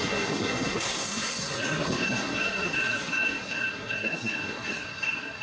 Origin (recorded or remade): remade